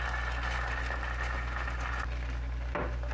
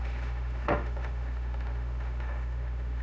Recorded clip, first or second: first